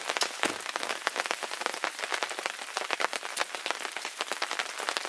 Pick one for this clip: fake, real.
real